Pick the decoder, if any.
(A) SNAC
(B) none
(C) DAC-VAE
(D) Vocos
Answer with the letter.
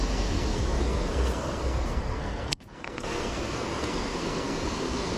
A